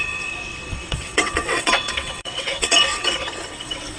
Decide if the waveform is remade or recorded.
remade